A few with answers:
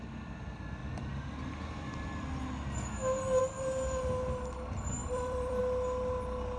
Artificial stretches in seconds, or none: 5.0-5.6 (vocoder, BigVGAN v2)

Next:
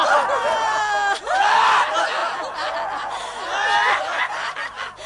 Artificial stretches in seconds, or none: none

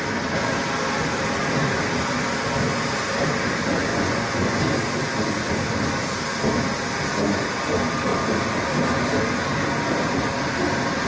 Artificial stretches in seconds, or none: 3.9-4.6 (vocoder, Vocos)

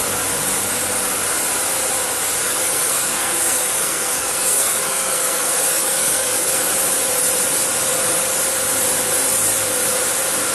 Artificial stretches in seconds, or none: 2.4-6.6 (codec, SNAC)